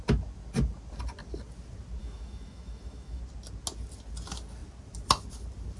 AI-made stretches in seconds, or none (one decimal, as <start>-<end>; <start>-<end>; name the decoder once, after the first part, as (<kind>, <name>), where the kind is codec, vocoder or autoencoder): 2.0-3.2 (autoencoder, DAC-VAE)